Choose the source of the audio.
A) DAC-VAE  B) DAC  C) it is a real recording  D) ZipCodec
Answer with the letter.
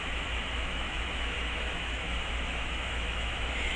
A